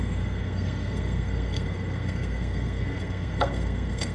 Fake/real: fake